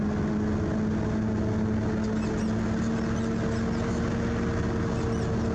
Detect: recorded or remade recorded